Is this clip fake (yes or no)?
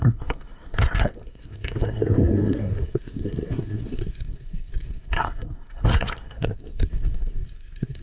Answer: yes